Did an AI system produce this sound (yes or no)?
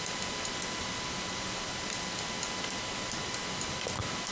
no